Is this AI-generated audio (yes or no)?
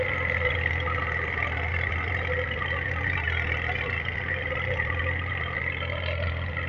no